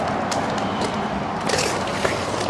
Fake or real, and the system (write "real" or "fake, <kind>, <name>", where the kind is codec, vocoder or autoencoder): real